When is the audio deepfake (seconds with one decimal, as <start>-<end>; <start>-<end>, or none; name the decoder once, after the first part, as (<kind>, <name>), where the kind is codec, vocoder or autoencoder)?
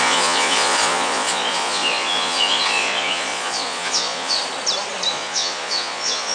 0.0-4.4 (vocoder, Vocos); 5.1-6.3